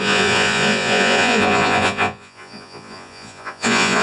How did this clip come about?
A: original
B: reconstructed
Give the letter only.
B